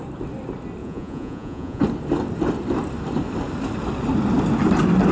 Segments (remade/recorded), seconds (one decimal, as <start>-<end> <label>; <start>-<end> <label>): 0.0-0.8 recorded; 0.8-1.8 remade; 1.8-5.1 recorded